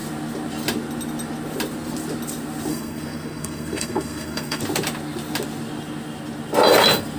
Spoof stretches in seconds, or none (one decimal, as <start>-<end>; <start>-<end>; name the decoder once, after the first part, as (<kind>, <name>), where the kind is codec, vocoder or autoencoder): 2.7-4.6 (codec, SNAC)